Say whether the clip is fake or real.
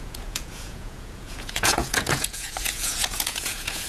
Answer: fake